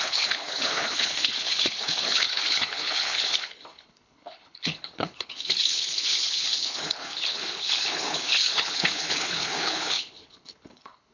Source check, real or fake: fake